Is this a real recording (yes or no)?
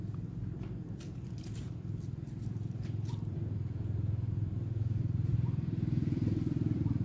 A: no